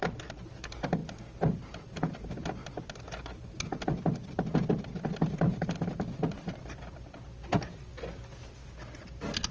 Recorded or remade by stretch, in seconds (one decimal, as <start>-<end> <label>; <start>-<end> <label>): 0.0-9.5 recorded